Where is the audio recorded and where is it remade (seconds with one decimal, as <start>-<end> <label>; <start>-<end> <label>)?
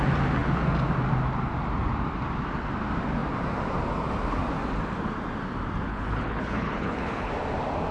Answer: 0.0-5.9 recorded; 5.9-7.3 remade; 7.3-7.9 recorded